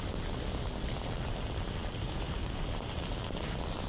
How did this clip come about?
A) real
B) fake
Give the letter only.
B